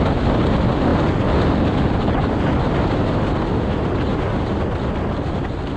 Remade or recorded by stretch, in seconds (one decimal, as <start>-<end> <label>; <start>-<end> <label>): 0.0-5.8 recorded

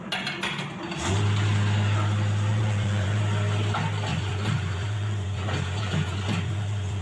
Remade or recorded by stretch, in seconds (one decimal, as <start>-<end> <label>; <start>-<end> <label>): 0.0-2.5 recorded; 2.5-3.2 remade; 3.2-4.1 recorded; 4.1-7.0 remade

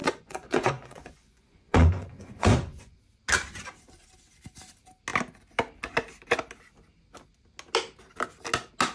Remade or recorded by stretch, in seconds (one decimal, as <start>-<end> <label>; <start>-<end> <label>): 0.0-3.0 remade; 3.0-8.9 recorded